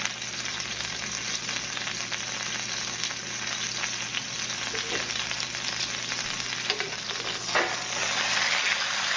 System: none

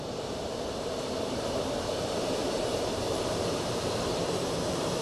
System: vocoder, BigVGAN v2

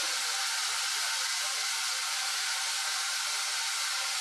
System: none